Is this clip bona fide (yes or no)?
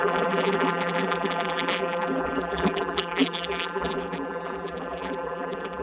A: no